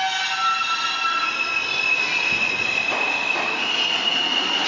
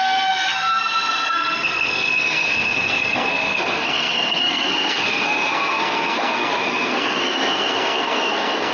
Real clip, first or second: first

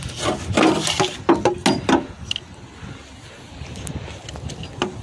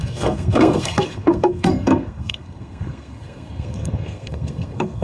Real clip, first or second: first